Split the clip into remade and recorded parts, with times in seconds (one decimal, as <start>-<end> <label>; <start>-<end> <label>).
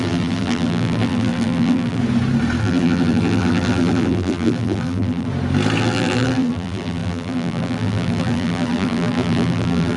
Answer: 0.0-2.0 remade; 2.0-2.6 recorded; 2.6-5.3 remade; 5.3-5.8 recorded; 5.8-10.0 remade